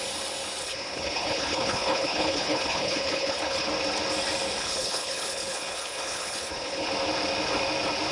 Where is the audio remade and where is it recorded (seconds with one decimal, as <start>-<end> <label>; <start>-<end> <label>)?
0.0-0.6 recorded; 0.6-3.7 remade; 3.7-4.6 recorded; 4.6-6.9 remade; 6.9-8.1 recorded